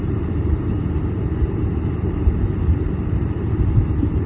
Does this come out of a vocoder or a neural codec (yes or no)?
yes